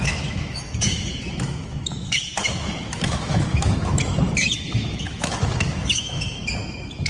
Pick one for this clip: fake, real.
fake